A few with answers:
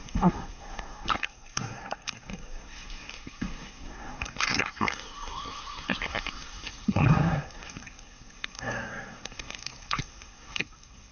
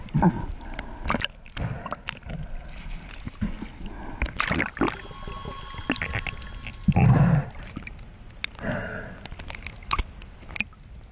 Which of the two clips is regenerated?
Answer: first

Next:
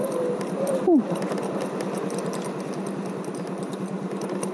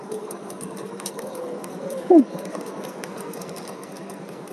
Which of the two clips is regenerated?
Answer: second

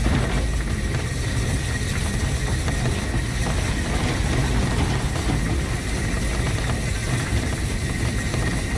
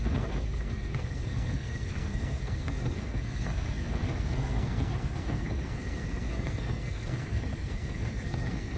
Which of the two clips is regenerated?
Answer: second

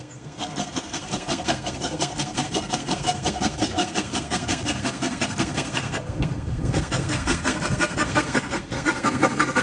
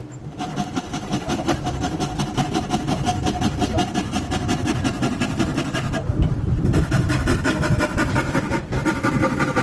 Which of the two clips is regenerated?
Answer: first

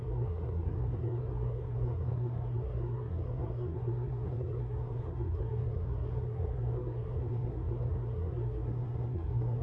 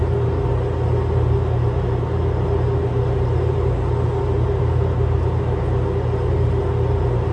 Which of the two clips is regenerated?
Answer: first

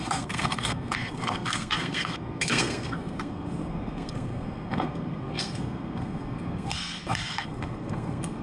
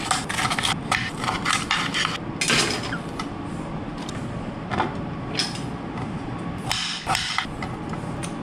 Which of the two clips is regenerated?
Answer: first